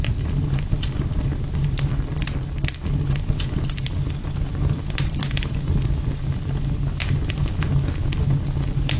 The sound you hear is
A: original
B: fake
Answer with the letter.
A